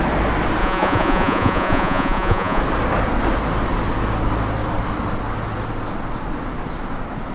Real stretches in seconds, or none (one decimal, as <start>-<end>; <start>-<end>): 0.0-0.6; 2.6-7.3